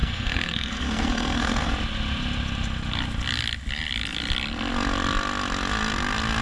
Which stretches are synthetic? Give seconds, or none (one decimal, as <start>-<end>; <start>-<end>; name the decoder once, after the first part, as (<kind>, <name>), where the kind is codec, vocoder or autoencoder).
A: 0.0-1.7 (codec, SNAC)